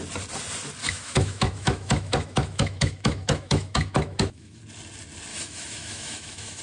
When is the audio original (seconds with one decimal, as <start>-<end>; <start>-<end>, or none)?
0.0-0.8; 4.6-5.3